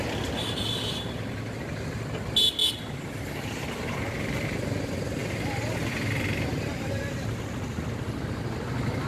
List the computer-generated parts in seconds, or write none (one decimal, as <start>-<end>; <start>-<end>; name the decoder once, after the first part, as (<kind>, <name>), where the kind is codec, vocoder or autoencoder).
none